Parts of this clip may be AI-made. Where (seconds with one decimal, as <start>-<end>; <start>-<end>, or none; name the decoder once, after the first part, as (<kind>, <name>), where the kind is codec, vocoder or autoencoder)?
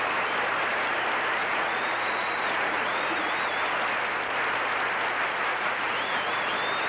1.4-3.4 (vocoder, Vocos); 5.5-6.5